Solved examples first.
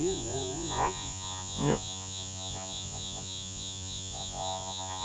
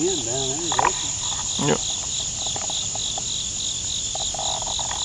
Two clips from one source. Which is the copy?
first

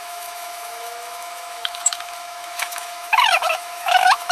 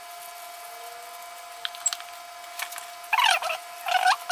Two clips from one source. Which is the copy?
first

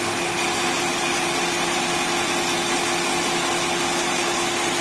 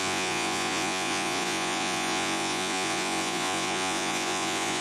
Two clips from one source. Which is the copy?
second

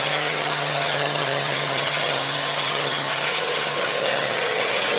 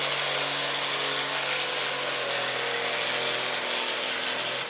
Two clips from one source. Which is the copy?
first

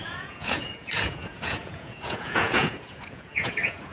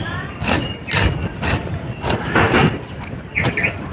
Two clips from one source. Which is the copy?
first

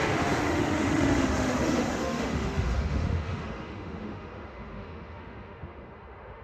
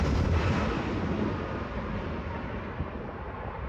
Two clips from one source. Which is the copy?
first